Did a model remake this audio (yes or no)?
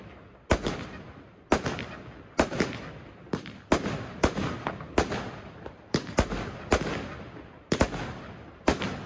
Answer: no